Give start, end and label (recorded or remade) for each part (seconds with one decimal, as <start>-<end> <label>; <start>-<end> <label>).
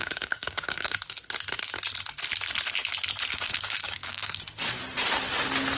0.0-0.9 remade; 0.9-3.3 recorded; 3.3-4.4 remade; 4.4-5.8 recorded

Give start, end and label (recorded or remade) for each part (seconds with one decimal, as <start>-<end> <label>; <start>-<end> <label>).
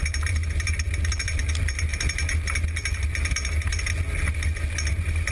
0.0-5.3 recorded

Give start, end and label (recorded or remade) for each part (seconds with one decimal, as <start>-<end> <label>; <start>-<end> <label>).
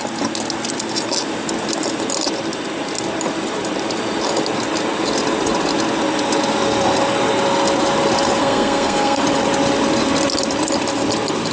0.0-8.4 recorded; 8.4-9.2 remade; 9.2-11.5 recorded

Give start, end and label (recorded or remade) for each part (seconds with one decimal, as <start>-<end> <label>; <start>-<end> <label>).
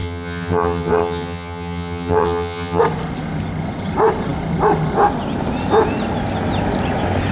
0.0-2.8 remade; 2.8-7.3 recorded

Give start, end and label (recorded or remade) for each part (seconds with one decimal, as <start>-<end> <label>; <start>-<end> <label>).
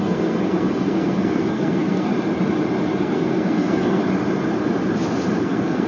0.0-2.1 remade; 2.1-3.0 recorded; 3.0-4.0 remade; 4.0-5.4 recorded; 5.4-5.9 remade